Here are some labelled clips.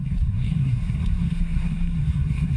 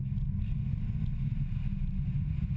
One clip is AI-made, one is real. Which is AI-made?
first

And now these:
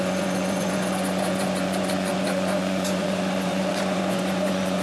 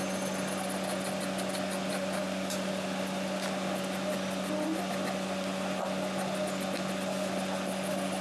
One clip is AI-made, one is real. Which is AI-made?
first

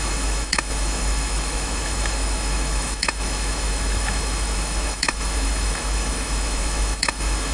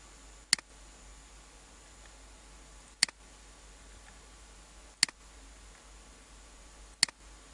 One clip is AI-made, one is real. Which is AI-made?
first